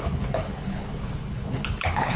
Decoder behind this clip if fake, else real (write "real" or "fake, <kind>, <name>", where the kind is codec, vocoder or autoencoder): fake, codec, HILCodec